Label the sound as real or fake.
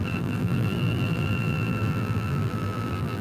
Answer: fake